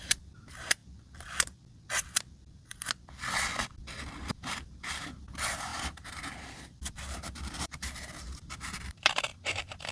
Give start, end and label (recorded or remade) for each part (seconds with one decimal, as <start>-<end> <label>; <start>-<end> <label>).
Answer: 0.0-0.8 remade; 0.8-4.0 recorded; 4.0-9.9 remade